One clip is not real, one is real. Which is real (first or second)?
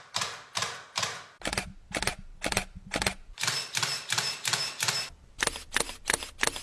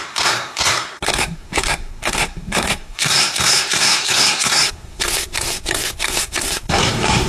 first